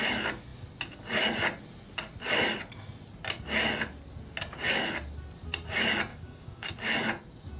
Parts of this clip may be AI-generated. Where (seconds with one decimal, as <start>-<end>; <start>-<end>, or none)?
6.1-6.7

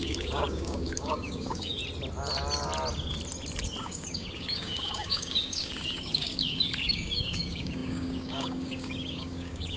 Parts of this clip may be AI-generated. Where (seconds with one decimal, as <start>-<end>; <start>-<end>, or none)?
0.0-1.8; 3.8-9.8

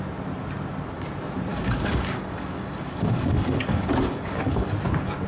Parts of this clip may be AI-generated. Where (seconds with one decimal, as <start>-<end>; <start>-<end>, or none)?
1.5-4.7

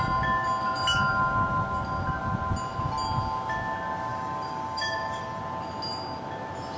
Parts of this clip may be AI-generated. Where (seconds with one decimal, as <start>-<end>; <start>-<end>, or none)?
4.1-5.4

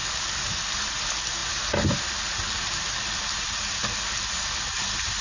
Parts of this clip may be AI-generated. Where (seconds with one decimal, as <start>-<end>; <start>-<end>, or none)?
none

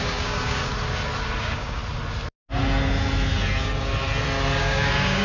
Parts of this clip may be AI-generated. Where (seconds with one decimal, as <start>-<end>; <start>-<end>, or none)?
0.0-0.7; 1.4-1.8; 4.6-5.2